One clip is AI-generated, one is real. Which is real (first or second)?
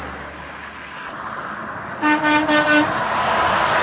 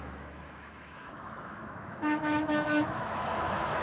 first